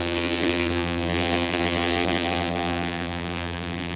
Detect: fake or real fake